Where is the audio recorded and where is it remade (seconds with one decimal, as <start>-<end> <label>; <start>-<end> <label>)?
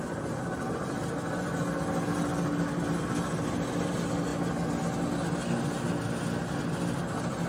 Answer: 0.0-7.5 recorded